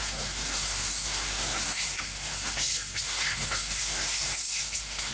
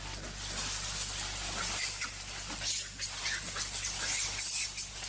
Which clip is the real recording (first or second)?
second